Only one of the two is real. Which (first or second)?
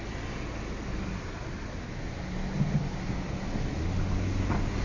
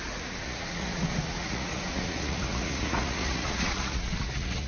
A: first